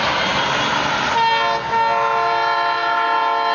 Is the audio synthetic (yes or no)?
no